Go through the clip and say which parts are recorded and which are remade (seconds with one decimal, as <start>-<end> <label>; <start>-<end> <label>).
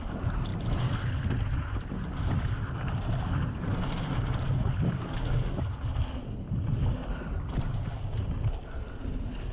0.0-9.5 recorded